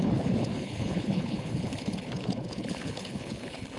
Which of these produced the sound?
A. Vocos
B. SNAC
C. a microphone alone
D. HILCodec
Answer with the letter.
D